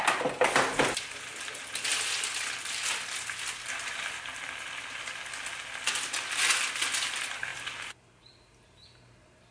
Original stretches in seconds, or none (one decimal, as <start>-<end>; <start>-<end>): 0.0-7.5; 8.6-9.5